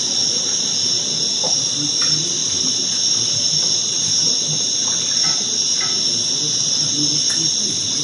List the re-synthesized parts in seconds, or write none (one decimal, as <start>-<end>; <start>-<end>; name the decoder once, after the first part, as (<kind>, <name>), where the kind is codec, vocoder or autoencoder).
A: none